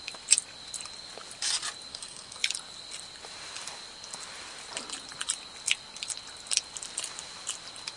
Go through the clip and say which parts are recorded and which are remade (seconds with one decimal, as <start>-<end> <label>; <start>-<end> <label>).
0.0-1.9 recorded; 1.9-2.4 remade; 2.4-8.0 recorded